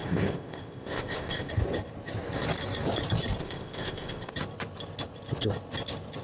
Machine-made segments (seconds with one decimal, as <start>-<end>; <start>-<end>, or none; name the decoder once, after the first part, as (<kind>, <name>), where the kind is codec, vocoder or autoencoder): 0.0-1.5 (codec, ZipCodec); 3.4-4.3